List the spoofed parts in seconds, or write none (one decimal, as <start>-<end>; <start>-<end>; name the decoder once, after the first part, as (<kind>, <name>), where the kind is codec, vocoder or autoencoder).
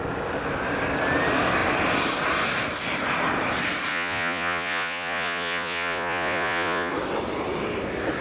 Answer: 3.9-6.9 (vocoder, Vocos)